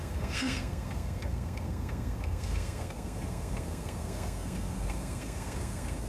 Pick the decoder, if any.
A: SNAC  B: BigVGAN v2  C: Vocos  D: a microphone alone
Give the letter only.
A